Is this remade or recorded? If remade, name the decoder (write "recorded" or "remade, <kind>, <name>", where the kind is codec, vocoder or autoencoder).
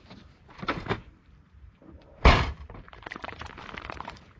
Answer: remade, vocoder, BigVGAN v2